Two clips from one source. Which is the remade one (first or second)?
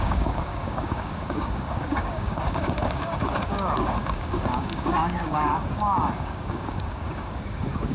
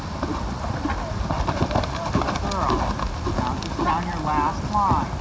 first